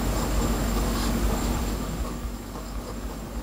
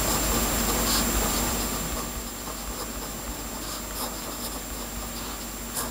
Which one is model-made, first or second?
first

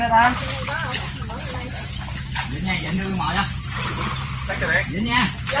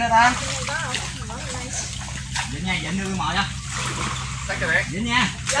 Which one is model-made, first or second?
first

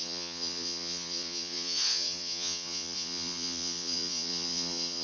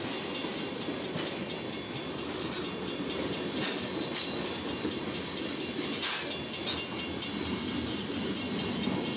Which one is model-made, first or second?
first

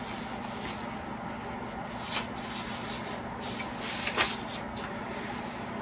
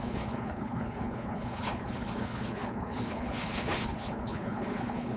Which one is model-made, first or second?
second